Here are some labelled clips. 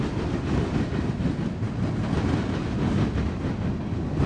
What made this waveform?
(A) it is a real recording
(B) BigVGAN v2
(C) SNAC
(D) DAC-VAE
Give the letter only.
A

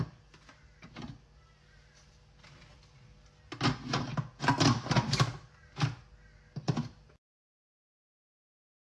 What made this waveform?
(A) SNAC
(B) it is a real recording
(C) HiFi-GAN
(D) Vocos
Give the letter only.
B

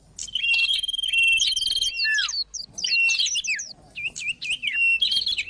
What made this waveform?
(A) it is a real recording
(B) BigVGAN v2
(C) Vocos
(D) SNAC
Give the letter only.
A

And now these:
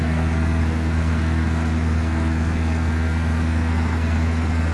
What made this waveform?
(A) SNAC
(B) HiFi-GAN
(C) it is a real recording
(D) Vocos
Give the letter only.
A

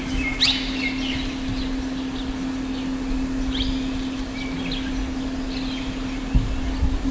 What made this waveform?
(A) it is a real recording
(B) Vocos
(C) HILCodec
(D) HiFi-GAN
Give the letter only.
A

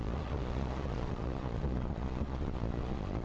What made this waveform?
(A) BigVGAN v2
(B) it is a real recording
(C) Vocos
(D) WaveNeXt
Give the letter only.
C